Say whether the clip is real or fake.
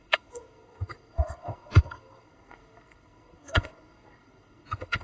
fake